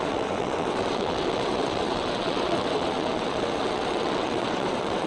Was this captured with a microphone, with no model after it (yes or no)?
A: no